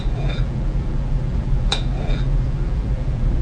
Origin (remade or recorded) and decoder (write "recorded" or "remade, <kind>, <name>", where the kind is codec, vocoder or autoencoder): remade, vocoder, BigVGAN v2